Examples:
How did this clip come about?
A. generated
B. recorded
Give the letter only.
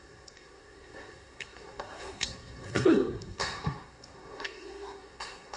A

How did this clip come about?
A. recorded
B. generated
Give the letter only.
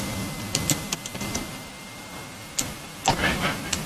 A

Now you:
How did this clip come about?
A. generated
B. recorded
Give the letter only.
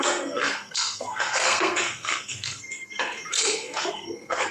A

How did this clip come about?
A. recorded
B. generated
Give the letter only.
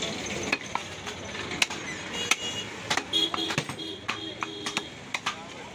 A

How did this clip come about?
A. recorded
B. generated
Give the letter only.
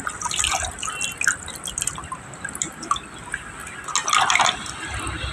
A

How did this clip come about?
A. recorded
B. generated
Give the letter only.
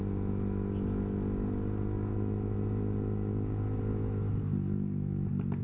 A